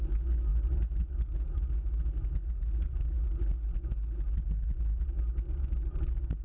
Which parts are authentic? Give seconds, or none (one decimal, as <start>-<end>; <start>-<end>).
0.0-6.4